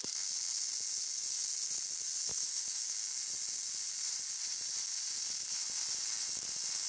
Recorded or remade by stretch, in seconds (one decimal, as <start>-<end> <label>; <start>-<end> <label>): 0.0-2.3 recorded; 2.3-3.0 remade; 3.0-6.9 recorded

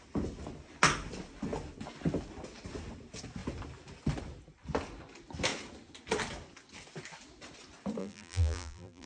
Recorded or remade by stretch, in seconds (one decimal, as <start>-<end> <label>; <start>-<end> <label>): 0.0-8.0 recorded; 8.0-9.1 remade

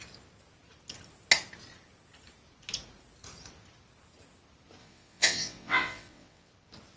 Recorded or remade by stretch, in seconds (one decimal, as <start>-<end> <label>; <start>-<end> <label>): 0.0-4.8 recorded; 4.8-6.5 remade; 6.5-7.0 recorded

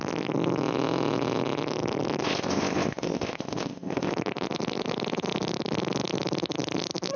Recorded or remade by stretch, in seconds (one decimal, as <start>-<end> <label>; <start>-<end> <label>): 0.0-2.2 recorded; 2.2-4.1 remade; 4.1-7.2 recorded

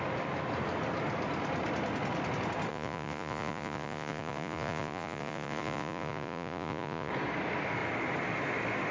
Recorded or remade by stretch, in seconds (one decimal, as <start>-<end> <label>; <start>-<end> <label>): 0.0-2.7 recorded; 2.7-7.1 remade; 7.1-8.9 recorded

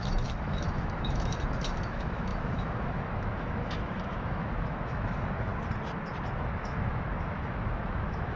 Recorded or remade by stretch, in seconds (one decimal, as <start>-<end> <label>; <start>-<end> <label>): 0.0-5.5 remade; 5.5-6.4 recorded; 6.4-8.4 remade

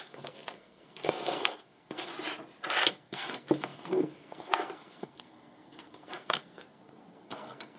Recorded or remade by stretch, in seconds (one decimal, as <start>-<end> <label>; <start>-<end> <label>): 0.0-2.1 remade; 2.1-2.9 recorded; 2.9-7.8 remade

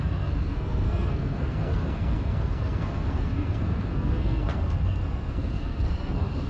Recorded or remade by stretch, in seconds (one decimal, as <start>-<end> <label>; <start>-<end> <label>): 0.0-6.5 remade